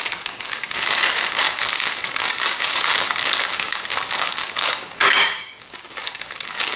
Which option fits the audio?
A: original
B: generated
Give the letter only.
B